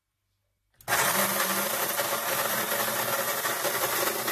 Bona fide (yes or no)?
yes